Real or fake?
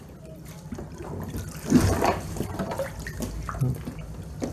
real